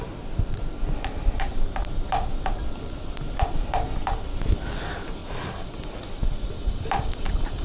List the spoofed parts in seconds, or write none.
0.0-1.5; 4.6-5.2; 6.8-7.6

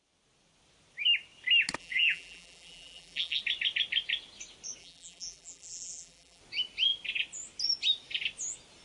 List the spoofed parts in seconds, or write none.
1.8-3.4; 4.8-6.4

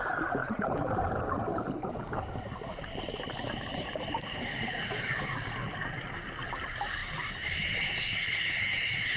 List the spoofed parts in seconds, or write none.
0.4-5.2

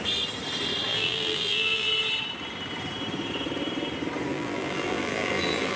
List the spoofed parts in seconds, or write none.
0.9-1.9; 4.3-5.8

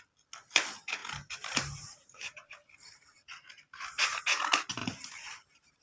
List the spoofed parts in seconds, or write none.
1.0-4.2; 4.8-5.8

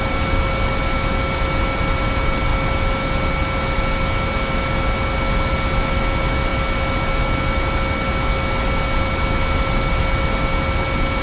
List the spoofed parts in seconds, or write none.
none

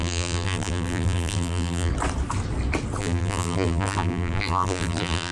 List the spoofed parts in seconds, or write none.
0.0-1.9; 3.0-5.3